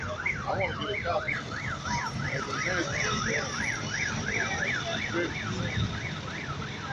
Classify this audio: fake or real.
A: real